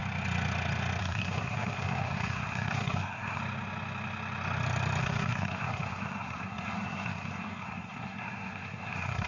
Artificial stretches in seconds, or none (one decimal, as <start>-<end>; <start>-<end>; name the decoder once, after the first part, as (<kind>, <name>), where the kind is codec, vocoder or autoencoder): 1.0-3.4 (codec, SNAC); 5.0-9.3